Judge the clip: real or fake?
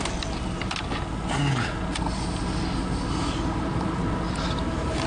real